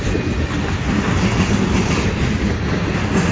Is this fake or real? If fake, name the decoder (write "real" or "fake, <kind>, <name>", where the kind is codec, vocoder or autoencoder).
real